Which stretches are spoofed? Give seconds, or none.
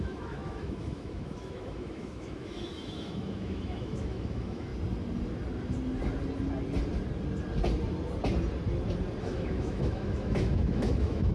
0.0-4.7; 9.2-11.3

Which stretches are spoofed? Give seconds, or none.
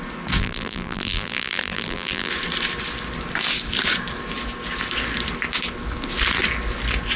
0.4-2.3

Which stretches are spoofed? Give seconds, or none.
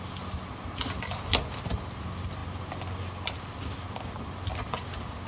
none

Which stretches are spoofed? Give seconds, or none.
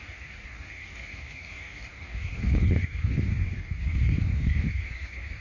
0.0-5.4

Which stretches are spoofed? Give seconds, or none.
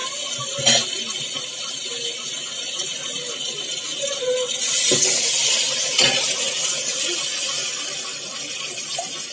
none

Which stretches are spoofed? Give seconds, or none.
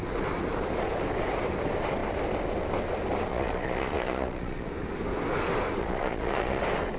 3.3-4.7; 5.8-6.6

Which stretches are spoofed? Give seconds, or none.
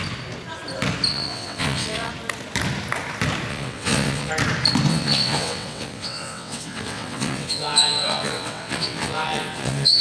1.1-2.1; 3.5-4.3; 4.9-10.0